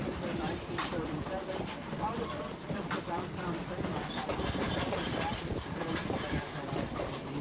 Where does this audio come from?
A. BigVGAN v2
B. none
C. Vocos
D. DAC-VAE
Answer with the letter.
A